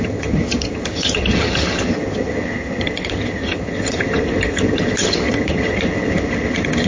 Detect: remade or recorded remade